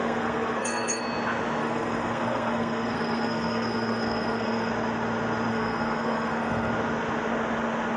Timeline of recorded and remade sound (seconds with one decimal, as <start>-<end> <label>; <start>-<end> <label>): 0.0-1.0 remade; 1.0-1.6 recorded; 1.6-4.7 remade; 4.7-5.5 recorded; 5.5-6.7 remade; 6.7-8.0 recorded